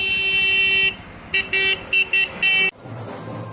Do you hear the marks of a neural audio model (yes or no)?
no